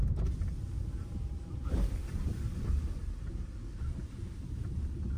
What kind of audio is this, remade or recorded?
remade